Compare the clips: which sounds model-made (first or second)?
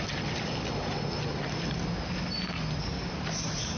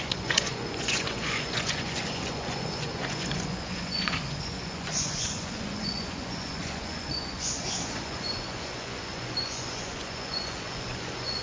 second